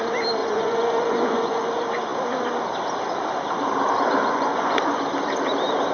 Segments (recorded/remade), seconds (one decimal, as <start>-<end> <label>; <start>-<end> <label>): 0.0-0.4 recorded; 0.4-1.7 remade; 1.7-4.2 recorded; 4.2-5.0 remade; 5.0-5.9 recorded